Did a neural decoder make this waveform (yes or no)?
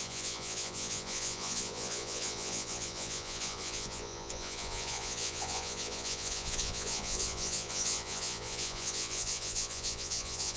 yes